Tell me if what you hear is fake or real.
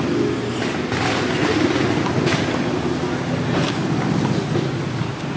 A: real